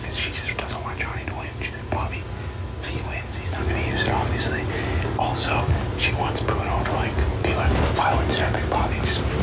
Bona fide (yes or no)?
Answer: yes